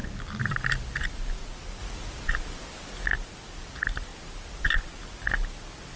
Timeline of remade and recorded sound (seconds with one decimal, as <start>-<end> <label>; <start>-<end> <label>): 0.0-6.0 recorded